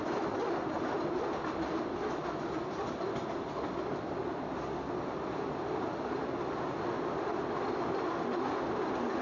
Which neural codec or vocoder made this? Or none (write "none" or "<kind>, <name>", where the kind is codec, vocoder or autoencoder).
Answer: none